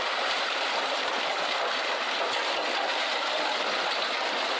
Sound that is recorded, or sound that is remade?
recorded